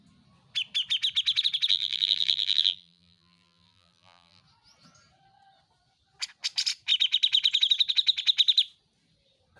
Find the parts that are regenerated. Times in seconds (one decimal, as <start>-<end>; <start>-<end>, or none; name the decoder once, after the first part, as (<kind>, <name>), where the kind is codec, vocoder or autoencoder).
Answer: 1.7-4.4 (vocoder, BigVGAN v2)